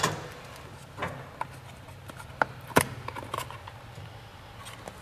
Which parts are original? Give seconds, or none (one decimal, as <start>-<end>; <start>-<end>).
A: 0.0-5.0